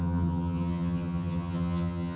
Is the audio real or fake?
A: fake